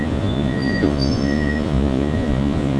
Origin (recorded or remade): remade